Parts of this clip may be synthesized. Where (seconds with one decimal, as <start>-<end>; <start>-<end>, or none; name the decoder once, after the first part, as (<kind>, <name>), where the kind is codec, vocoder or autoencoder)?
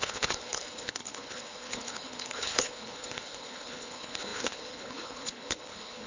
0.0-6.1 (codec, HILCodec)